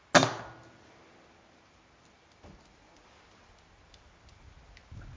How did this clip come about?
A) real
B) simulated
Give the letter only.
A